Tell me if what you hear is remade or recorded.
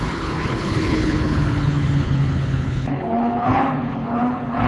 remade